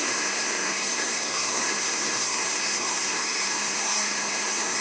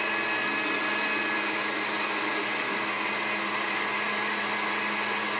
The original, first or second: second